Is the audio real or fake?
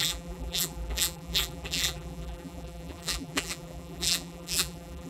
fake